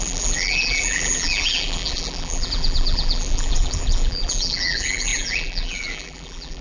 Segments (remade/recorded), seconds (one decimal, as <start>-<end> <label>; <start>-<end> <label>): 0.0-6.6 remade